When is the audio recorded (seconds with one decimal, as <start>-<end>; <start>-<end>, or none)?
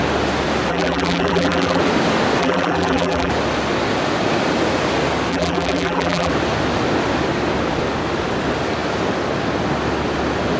0.0-0.7; 1.8-2.4; 3.3-5.3; 6.3-10.6